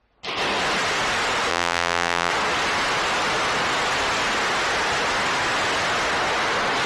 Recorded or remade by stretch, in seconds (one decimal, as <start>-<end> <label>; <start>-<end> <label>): 0.0-1.5 recorded; 1.5-2.3 remade; 2.3-6.9 recorded